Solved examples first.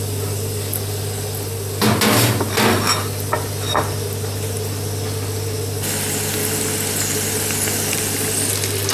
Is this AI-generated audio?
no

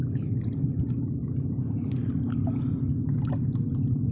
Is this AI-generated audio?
no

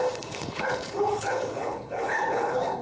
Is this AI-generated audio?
yes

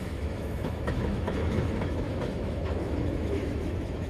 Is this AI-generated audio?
yes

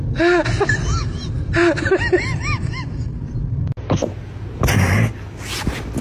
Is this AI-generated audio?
no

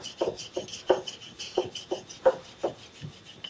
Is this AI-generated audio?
no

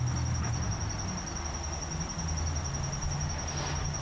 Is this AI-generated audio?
no